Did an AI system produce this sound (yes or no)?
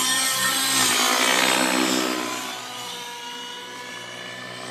no